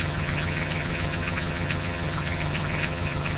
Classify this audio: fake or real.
fake